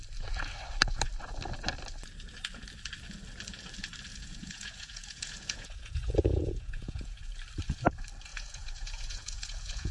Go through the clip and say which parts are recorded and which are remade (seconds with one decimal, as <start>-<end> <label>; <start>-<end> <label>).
0.0-4.1 recorded; 4.1-7.2 remade; 7.2-8.3 recorded; 8.3-9.9 remade